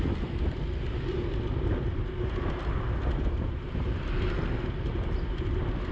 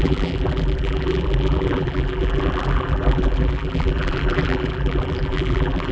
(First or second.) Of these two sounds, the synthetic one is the second